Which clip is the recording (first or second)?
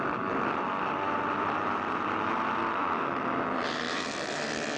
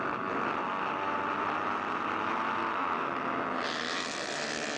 second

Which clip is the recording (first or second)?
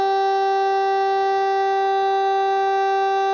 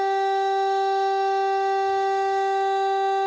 first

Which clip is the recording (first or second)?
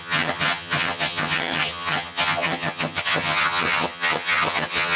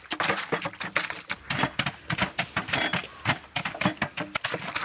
second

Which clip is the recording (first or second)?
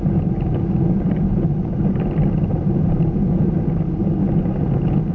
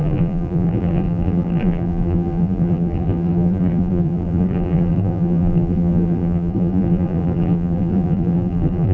first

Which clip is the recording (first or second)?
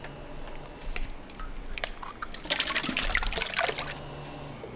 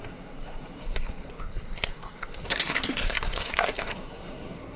first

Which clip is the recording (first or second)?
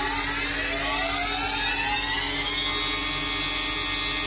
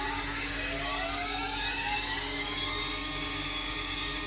first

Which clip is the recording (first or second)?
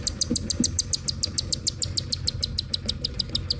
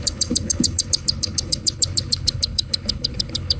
first